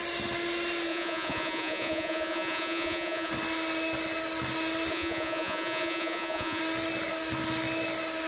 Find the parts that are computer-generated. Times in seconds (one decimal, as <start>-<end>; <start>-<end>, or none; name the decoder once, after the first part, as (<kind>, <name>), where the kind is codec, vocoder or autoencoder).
0.9-3.3 (vocoder, Vocos); 4.9-6.6